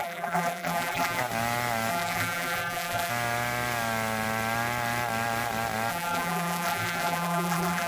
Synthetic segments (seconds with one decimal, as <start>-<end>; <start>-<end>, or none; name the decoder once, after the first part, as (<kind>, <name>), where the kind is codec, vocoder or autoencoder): 0.0-1.2 (vocoder, BigVGAN v2); 1.9-3.1; 5.9-7.9